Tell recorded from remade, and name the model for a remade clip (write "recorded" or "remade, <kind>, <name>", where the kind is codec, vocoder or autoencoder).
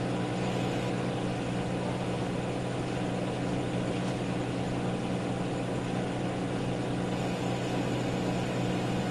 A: recorded